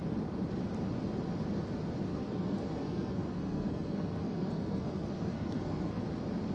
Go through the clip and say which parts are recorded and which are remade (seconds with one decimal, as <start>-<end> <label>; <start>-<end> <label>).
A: 0.0-2.1 recorded; 2.1-6.0 remade; 6.0-6.5 recorded